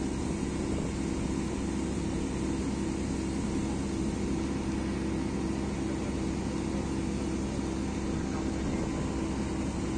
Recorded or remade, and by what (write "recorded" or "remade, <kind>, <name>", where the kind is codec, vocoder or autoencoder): recorded